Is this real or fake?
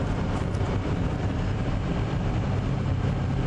fake